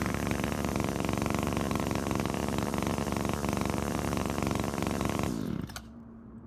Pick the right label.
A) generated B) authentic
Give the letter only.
A